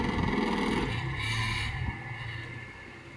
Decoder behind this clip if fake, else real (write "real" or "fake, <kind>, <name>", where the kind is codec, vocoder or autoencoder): real